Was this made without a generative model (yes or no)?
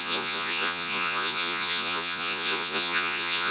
no